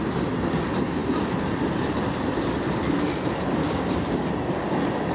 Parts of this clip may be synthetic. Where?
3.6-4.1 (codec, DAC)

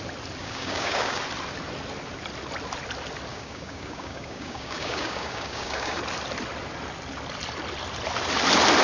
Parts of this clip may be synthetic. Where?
0.4-1.2 (codec, DAC); 3.3-6.0

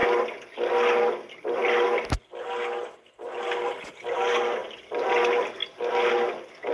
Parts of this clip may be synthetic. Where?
none

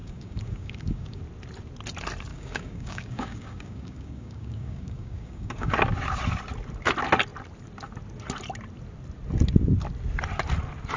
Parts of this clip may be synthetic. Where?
0.0-1.2 (codec, DAC); 2.3-5.7